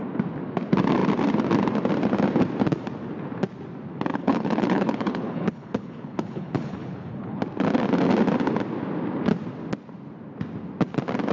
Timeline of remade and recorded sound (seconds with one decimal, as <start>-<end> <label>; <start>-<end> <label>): 0.0-4.1 recorded; 4.1-7.4 remade; 7.4-11.3 recorded